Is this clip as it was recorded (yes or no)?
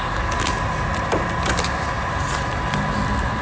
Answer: yes